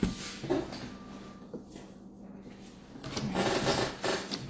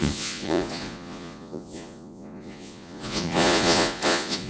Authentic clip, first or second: first